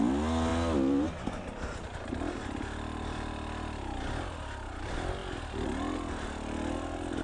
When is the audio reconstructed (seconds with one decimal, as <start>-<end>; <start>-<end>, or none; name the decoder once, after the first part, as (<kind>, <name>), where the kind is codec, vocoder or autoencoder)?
none